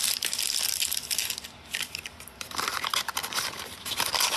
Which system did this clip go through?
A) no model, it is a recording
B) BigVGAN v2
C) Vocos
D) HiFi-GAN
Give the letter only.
A